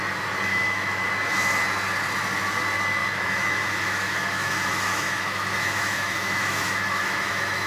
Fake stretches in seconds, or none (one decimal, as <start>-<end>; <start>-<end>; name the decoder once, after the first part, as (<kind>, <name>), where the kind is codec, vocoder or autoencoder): 0.5-1.1 (autoencoder, DAC-VAE); 3.0-7.7